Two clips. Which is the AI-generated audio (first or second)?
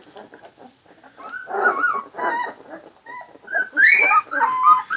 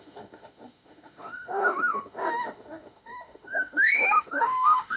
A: second